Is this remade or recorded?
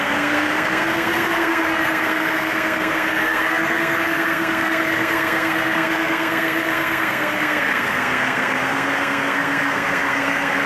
remade